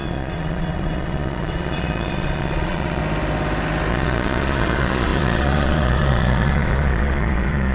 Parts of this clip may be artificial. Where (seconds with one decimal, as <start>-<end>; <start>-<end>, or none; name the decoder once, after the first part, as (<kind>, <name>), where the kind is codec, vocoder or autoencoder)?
0.0-3.0 (vocoder, Vocos); 3.9-7.7